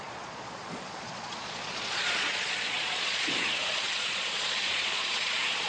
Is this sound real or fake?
fake